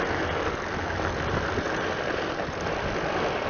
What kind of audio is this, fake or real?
real